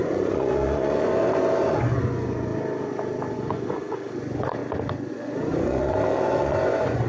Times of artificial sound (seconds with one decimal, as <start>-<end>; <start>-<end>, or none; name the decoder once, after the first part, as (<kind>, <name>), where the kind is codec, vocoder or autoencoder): 0.0-2.5 (vocoder, Vocos); 3.3-4.6; 5.1-7.1